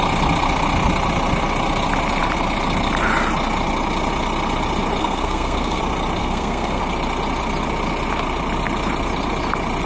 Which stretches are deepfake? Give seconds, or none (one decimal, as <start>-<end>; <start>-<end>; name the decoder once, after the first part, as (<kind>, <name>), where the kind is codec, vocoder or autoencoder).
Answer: 5.0-5.8 (codec, SNAC); 6.2-6.8